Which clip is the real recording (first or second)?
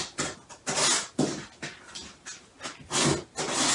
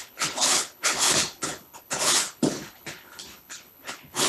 first